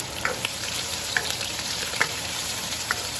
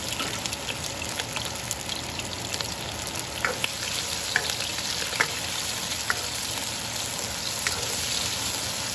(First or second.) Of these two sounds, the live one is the second